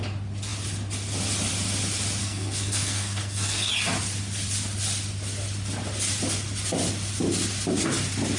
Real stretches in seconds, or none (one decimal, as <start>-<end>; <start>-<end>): 0.0-2.2; 3.7-8.4